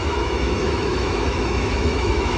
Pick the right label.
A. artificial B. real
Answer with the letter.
A